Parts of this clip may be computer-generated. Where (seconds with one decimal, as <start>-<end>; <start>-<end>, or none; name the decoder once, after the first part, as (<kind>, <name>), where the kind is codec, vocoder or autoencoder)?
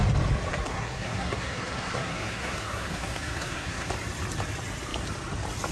0.7-3.9 (codec, SNAC)